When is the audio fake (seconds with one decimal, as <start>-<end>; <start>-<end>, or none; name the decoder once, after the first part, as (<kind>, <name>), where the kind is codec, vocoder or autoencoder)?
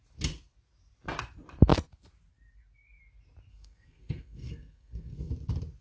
3.5-5.3 (codec, SNAC)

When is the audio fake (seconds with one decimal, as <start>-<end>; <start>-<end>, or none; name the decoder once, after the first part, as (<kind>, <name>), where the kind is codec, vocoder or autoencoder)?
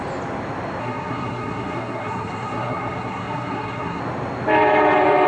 0.8-4.0 (codec, SNAC)